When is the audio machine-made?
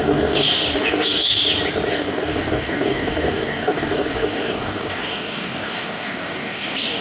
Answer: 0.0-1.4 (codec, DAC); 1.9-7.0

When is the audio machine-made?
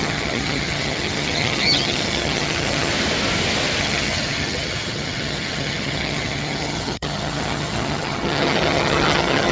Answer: 0.0-2.9 (vocoder, HiFi-GAN); 3.8-9.5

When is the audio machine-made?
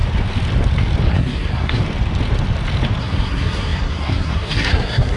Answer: 1.1-1.8 (codec, SNAC); 3.0-5.2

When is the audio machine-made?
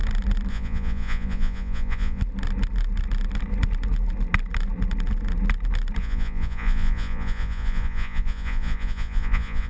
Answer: 0.5-2.2 (vocoder, Vocos); 6.0-9.7